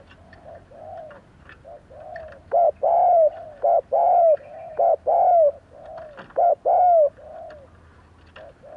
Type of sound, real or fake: real